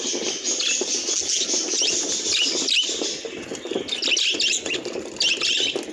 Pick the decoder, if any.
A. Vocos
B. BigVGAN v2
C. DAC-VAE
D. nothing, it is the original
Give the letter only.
D